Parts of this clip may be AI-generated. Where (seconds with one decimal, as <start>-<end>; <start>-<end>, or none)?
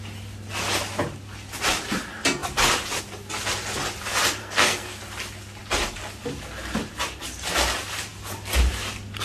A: 4.4-5.0